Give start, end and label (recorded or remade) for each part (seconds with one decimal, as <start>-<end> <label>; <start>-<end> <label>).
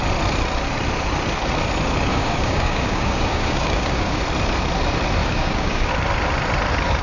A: 0.0-2.1 recorded; 2.1-4.2 remade; 4.2-5.2 recorded; 5.2-5.9 remade; 5.9-7.0 recorded